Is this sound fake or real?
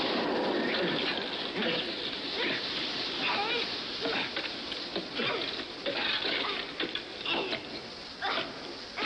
real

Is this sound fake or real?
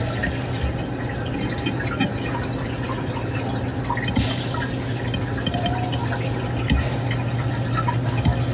real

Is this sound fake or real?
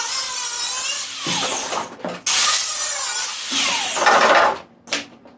real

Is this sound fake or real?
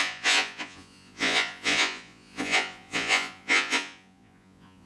fake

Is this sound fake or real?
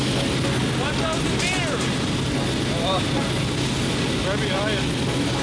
real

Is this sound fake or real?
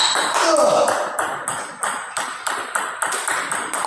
real